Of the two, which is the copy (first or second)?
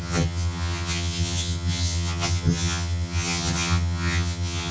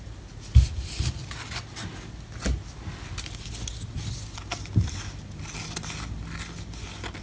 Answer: first